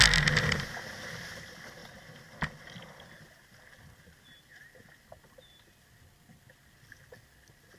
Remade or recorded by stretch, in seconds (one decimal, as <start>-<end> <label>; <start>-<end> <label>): 0.0-7.8 recorded